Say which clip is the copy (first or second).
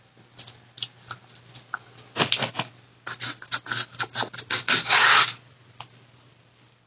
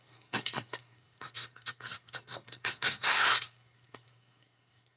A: second